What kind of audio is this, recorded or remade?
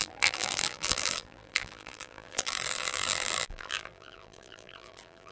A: remade